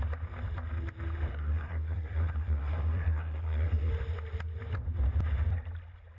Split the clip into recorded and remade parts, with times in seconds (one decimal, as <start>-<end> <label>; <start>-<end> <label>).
0.0-1.3 recorded; 1.3-3.9 remade; 3.9-6.2 recorded